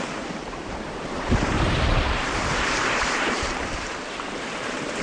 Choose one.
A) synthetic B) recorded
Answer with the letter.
A